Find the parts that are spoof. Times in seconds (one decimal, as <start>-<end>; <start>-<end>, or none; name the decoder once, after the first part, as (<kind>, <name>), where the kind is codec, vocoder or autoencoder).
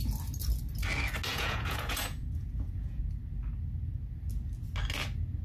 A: 1.3-3.0 (vocoder, Vocos)